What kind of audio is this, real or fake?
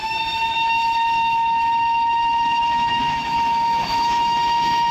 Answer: fake